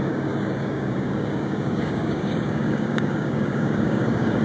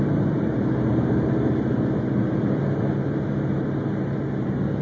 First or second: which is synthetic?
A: first